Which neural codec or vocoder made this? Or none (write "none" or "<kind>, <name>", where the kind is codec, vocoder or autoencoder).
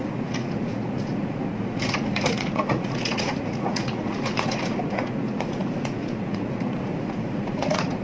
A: vocoder, Vocos